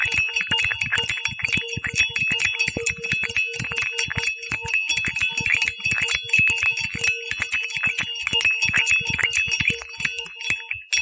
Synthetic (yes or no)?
no